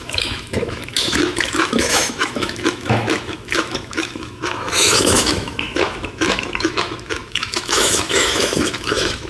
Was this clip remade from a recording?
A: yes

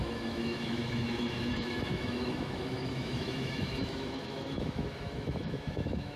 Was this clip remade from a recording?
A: yes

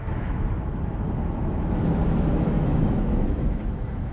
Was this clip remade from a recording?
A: yes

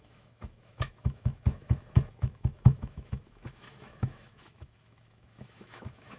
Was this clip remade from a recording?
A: yes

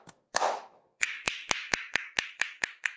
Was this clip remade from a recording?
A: yes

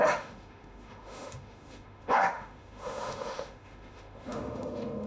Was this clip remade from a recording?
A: yes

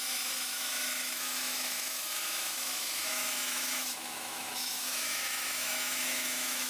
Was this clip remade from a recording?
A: yes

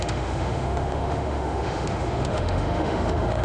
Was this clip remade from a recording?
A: yes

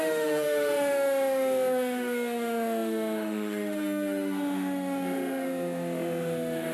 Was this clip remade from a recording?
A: yes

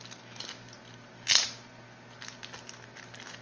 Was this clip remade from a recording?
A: no